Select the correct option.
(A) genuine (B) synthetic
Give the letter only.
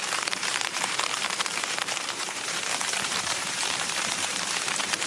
B